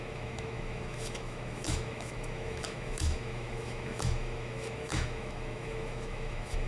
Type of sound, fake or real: fake